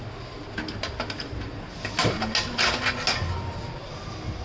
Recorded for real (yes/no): yes